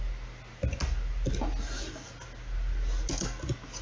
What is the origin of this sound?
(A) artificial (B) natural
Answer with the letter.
B